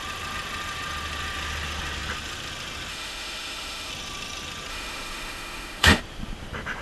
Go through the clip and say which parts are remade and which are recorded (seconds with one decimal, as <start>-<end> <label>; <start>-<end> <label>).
0.0-2.9 recorded; 2.9-3.9 remade; 3.9-4.7 recorded; 4.7-6.0 remade; 6.0-6.8 recorded